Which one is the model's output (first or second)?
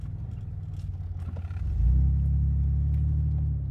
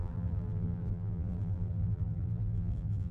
second